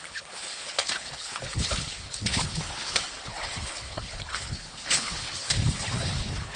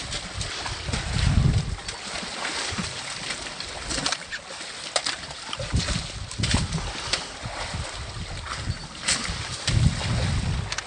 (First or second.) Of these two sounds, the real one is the second